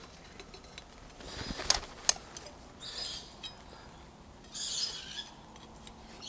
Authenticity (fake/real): real